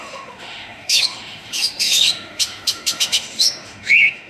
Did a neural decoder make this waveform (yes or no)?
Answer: yes